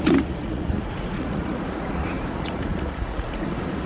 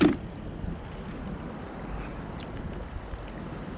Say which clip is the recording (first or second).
second